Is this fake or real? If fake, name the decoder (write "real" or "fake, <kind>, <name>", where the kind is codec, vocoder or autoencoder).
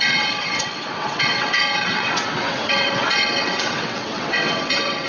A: fake, vocoder, WaveNeXt